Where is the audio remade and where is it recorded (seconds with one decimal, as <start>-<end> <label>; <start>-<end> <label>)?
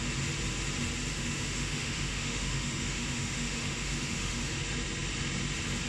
0.0-1.1 recorded; 1.1-4.6 remade; 4.6-5.9 recorded